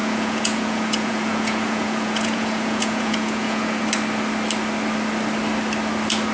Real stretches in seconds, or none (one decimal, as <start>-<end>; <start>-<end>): 3.8-6.3